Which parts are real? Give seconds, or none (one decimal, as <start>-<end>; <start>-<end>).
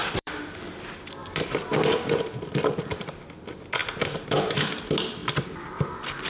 0.6-1.2; 3.1-3.8; 4.4-5.2